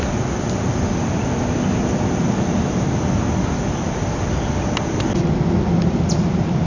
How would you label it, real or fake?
real